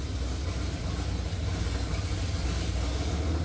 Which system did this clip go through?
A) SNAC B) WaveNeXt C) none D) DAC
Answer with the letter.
C